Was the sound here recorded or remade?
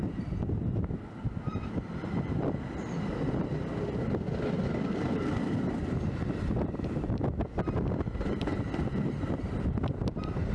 recorded